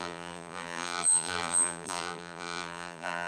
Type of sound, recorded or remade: remade